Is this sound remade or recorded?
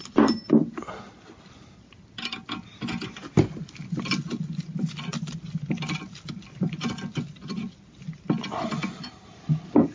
recorded